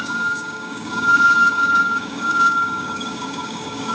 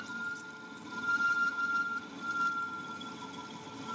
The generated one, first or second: first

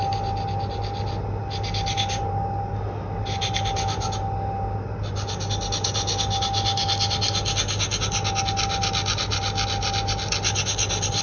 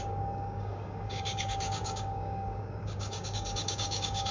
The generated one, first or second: second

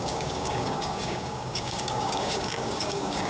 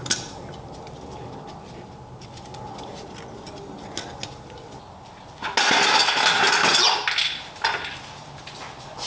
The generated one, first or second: first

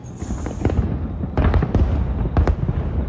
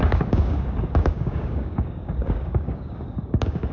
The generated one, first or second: second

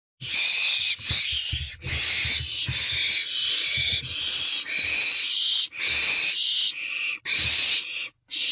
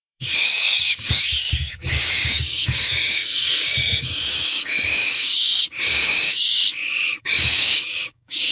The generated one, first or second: second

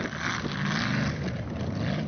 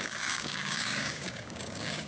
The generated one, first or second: second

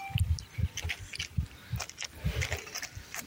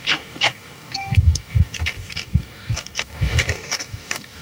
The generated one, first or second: second